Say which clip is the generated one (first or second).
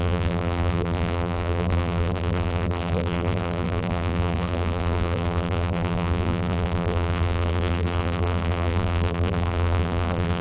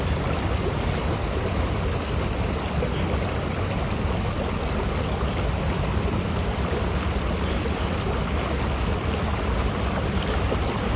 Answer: first